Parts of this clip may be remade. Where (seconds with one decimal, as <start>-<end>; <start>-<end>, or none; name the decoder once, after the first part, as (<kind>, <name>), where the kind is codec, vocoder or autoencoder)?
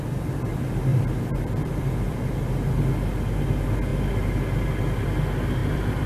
0.9-2.3 (vocoder, BigVGAN v2); 5.6-6.1